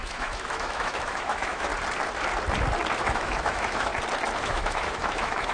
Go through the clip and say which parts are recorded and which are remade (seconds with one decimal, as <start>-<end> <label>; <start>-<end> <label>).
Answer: 0.0-1.7 remade; 1.7-3.0 recorded; 3.0-3.9 remade; 3.9-4.4 recorded; 4.4-5.5 remade